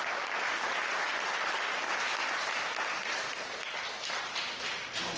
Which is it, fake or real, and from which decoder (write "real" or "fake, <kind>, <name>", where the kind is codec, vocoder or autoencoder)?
fake, vocoder, BigVGAN v2